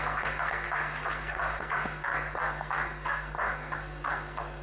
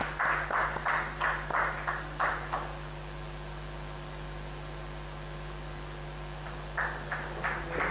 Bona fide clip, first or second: second